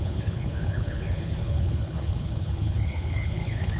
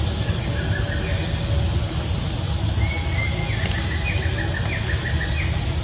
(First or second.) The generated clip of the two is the first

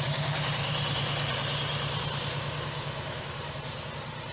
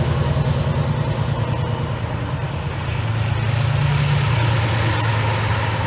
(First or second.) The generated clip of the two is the first